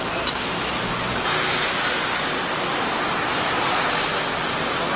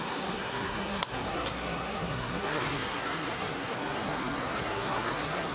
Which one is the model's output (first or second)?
second